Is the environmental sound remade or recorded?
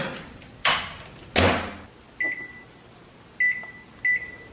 recorded